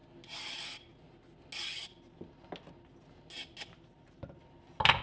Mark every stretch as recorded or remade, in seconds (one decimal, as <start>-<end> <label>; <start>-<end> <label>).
0.0-5.0 recorded